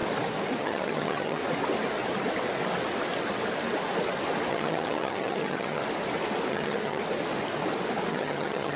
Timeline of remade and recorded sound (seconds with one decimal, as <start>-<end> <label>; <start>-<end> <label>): 0.0-0.6 recorded; 0.6-1.4 remade; 1.4-4.5 recorded; 4.5-5.8 remade; 5.8-6.5 recorded; 6.5-7.0 remade; 7.0-8.1 recorded; 8.1-8.8 remade